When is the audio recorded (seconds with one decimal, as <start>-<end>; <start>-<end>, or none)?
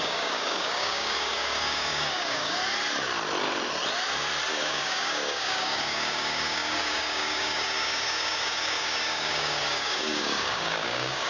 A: 2.6-4.5